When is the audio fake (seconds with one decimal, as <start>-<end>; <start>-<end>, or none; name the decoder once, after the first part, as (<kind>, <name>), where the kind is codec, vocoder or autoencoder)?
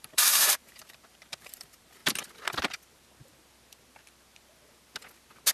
0.0-2.0 (vocoder, BigVGAN v2)